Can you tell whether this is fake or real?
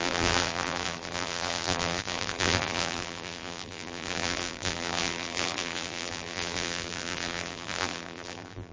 fake